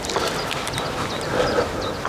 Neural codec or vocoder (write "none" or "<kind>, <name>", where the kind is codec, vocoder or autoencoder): none